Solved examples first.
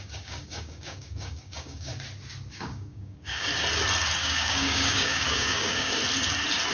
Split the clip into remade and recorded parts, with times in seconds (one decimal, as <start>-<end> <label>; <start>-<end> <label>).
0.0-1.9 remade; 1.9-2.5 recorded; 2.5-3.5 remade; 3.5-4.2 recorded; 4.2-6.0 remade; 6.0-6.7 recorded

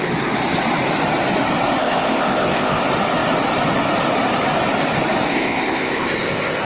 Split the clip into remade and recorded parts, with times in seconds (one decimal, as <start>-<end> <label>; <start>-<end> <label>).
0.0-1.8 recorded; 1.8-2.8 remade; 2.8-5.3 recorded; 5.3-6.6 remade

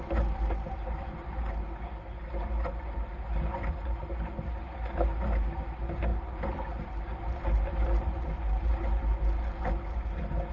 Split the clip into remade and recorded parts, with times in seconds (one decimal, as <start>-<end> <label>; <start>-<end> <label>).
0.0-10.5 recorded

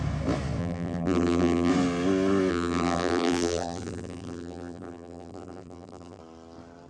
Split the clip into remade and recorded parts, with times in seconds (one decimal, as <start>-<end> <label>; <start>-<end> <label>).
0.0-0.6 recorded; 0.6-1.7 remade; 1.7-2.5 recorded; 2.5-6.2 remade; 6.2-6.9 recorded

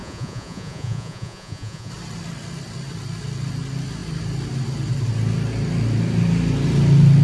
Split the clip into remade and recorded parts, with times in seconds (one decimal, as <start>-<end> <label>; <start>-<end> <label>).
0.0-1.9 remade; 1.9-7.2 recorded

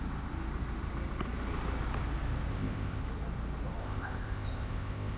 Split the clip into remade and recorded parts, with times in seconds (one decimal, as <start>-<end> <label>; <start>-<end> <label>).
0.0-2.5 recorded; 2.5-3.0 remade; 3.0-3.8 recorded; 3.8-5.2 remade